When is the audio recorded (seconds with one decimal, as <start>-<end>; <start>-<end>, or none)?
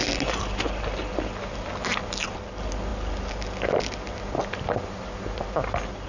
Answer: 0.0-6.1